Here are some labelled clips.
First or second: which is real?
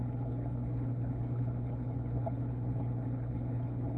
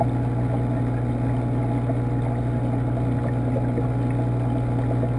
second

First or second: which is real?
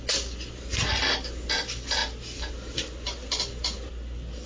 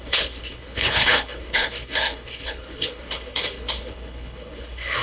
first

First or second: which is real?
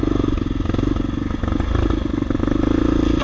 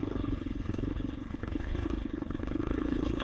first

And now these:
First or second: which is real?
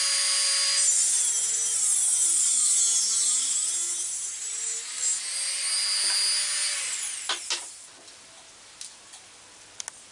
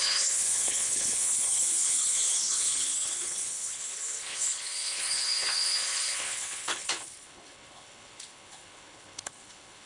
first